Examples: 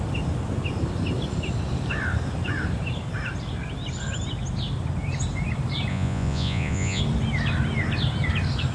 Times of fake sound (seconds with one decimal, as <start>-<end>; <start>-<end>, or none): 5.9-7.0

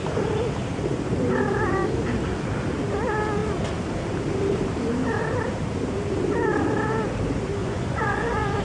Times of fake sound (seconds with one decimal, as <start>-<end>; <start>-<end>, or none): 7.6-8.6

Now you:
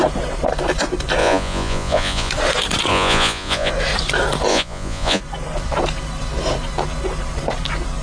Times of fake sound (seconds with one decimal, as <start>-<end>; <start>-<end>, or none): 1.2-2.3; 2.9-3.7; 4.5-5.2

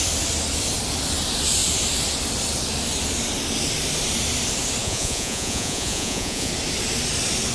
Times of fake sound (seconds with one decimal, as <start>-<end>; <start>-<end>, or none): 4.8-6.5